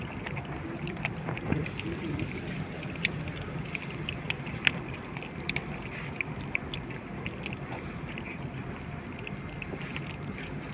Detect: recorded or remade remade